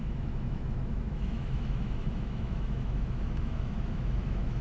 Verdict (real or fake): fake